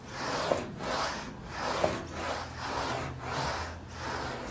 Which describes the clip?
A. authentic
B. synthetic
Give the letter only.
A